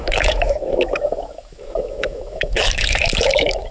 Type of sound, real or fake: fake